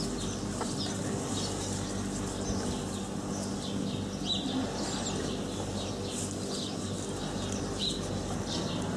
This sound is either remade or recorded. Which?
recorded